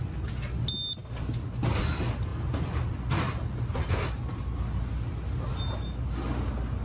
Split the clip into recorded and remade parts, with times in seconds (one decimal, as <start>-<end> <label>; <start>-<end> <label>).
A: 0.0-6.8 recorded